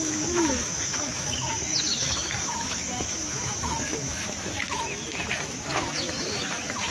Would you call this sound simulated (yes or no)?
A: yes